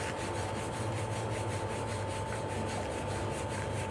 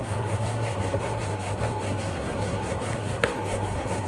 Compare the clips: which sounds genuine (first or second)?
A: first